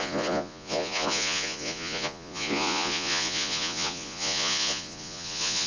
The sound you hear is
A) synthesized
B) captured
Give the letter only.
A